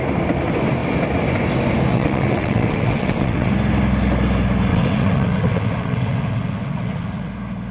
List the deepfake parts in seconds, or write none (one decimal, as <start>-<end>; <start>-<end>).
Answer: 1.9-3.5; 4.7-7.3